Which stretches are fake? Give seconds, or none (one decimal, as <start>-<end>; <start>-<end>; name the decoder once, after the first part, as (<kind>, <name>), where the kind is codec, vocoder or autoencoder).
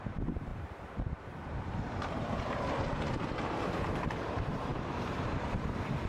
0.0-6.1 (vocoder, BigVGAN v2)